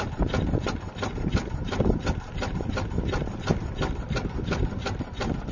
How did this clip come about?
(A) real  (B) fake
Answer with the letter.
A